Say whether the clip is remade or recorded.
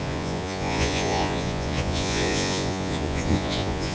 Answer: remade